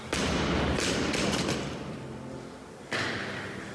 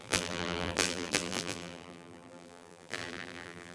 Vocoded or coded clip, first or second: second